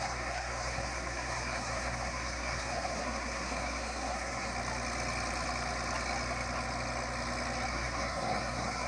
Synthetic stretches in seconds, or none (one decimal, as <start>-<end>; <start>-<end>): 0.0-4.5; 7.7-8.9